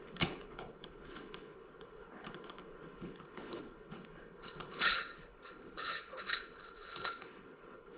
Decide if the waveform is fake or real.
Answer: fake